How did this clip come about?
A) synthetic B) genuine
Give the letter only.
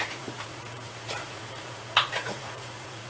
A